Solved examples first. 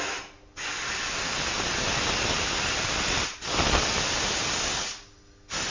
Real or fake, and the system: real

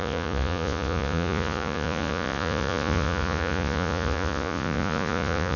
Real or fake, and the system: fake, vocoder, Vocos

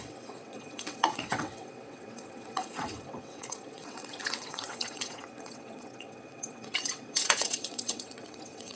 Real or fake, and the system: fake, vocoder, WaveNeXt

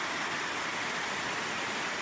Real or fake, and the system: real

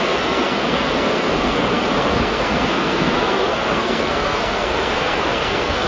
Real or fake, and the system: fake, codec, SNAC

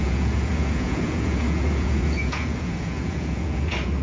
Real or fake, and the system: fake, vocoder, Vocos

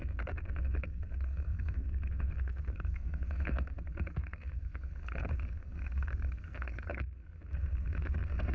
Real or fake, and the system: fake, codec, SNAC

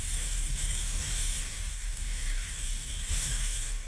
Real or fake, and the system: fake, codec, DAC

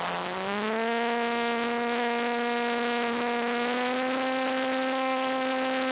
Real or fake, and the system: real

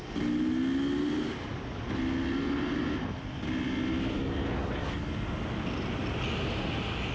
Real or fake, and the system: real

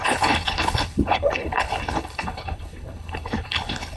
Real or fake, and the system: fake, codec, HILCodec